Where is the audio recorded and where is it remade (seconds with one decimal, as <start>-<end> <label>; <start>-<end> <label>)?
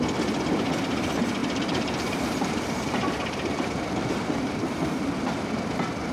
0.0-1.4 recorded; 1.4-5.0 remade; 5.0-6.1 recorded